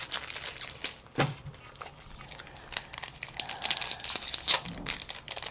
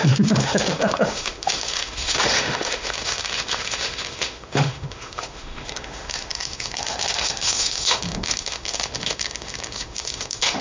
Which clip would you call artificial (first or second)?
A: second